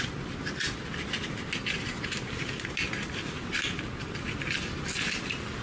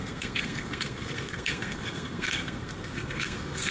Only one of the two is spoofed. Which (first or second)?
second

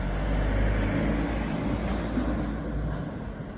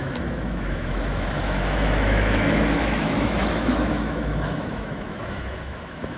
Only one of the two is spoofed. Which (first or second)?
second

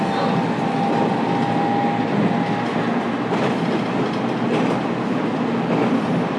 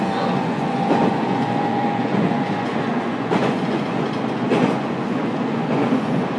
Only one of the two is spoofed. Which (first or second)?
second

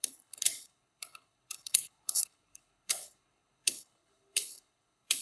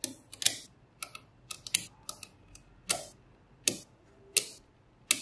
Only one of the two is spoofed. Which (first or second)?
first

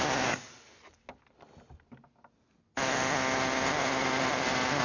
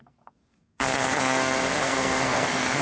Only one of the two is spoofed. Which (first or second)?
second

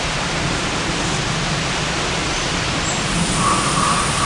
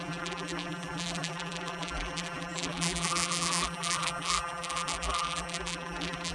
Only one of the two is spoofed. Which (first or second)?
second